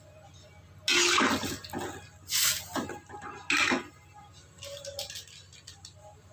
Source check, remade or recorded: recorded